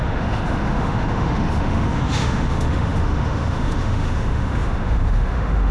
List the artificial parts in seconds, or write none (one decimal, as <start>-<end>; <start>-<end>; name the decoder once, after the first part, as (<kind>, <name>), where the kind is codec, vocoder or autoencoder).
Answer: 0.0-5.7 (autoencoder, DAC-VAE)